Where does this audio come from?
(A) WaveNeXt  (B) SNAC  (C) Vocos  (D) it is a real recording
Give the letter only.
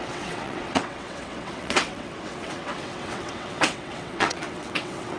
A